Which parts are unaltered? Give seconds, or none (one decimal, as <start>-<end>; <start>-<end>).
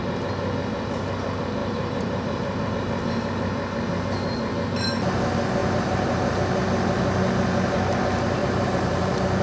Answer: 0.0-1.6; 2.7-5.6; 6.3-8.4